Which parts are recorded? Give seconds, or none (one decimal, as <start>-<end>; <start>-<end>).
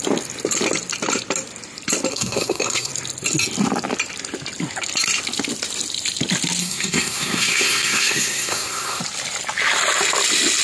0.0-2.1; 2.9-6.6; 9.0-10.6